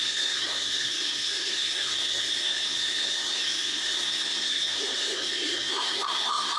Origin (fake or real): fake